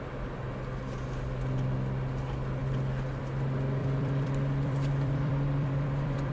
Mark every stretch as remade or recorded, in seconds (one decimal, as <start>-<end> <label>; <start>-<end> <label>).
0.0-3.8 recorded; 3.8-6.3 remade